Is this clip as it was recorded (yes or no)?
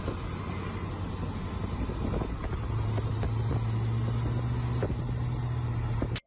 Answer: yes